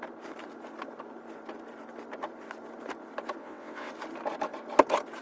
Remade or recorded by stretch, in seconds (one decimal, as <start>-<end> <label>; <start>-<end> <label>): 0.0-3.4 recorded; 3.4-3.9 remade; 3.9-5.2 recorded